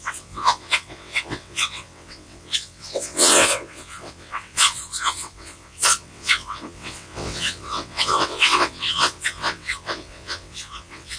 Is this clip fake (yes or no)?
yes